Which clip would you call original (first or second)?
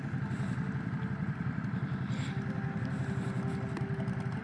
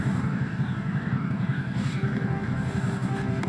first